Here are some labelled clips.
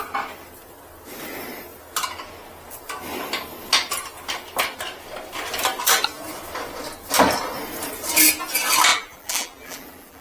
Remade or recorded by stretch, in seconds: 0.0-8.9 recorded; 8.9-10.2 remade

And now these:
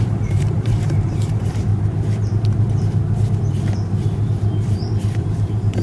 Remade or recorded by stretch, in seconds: 0.0-1.7 remade; 1.7-5.2 recorded; 5.2-5.8 remade

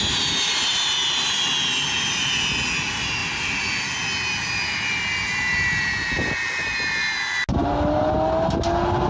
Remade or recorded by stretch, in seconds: 0.0-3.2 recorded; 3.2-3.9 remade; 3.9-9.1 recorded

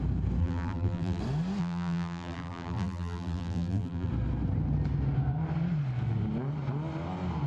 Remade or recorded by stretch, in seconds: 0.0-0.4 recorded; 0.4-1.2 remade; 1.2-1.6 recorded; 1.6-4.1 remade; 4.1-7.5 recorded

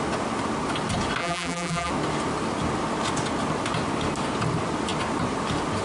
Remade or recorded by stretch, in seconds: 0.0-1.2 recorded; 1.2-1.9 remade; 1.9-5.8 recorded

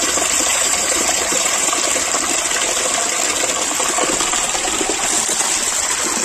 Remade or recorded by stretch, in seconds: 0.0-0.5 recorded; 0.5-1.7 remade; 1.7-6.2 recorded